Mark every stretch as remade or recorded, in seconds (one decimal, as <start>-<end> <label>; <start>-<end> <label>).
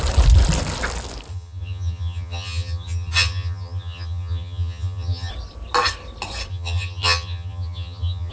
0.0-1.3 recorded; 1.3-5.3 remade; 5.3-6.5 recorded; 6.5-8.3 remade